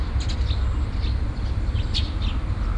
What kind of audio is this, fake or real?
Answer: real